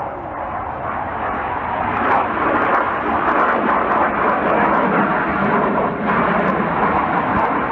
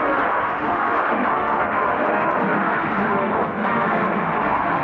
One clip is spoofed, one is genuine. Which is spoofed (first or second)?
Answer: second